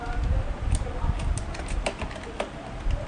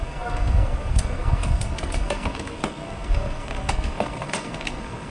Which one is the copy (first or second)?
second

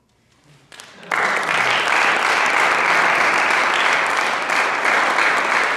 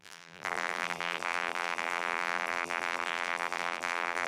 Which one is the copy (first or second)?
second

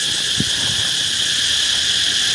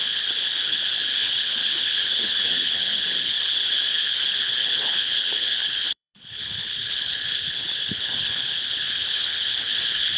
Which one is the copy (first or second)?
second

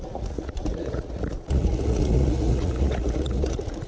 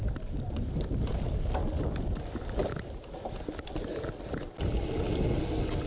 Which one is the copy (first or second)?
first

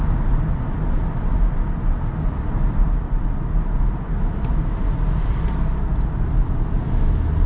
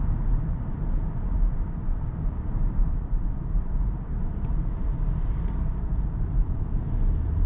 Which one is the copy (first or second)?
second